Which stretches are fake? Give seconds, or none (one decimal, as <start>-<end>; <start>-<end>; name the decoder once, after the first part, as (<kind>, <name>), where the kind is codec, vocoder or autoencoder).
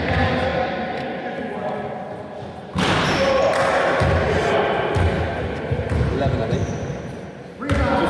none